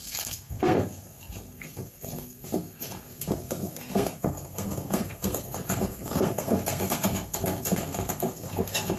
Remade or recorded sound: remade